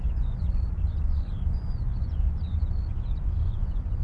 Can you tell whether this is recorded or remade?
remade